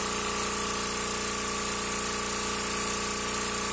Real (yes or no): yes